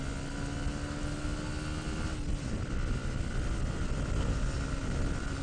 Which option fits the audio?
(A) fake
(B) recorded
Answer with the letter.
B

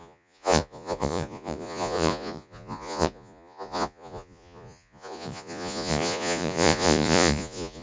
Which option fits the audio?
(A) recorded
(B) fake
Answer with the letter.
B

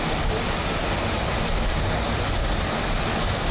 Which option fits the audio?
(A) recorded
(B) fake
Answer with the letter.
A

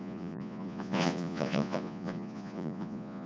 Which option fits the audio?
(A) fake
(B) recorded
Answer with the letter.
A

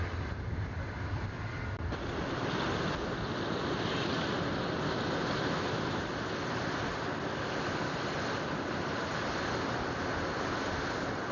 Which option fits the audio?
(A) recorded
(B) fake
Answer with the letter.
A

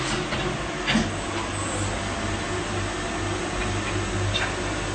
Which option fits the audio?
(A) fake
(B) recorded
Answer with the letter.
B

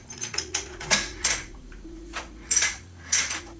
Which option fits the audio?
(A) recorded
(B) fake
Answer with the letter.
B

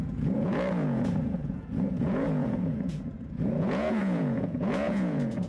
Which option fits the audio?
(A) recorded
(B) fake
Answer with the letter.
B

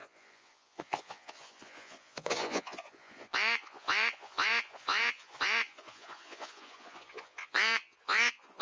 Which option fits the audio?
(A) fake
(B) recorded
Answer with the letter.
A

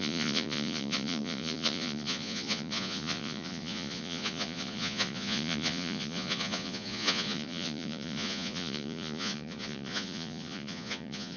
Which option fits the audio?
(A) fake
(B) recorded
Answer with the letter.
A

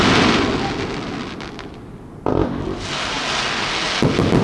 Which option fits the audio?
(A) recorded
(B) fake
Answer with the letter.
A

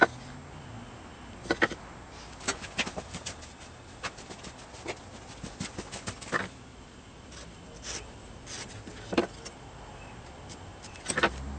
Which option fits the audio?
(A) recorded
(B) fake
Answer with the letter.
A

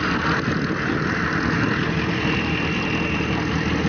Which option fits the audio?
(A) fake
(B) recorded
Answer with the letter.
B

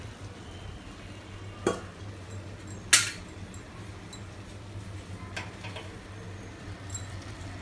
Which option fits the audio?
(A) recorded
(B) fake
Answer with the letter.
A